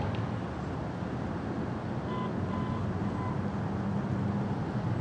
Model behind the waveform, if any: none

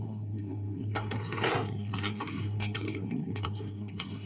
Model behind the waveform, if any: codec, SNAC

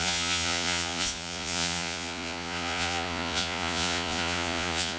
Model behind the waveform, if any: vocoder, Vocos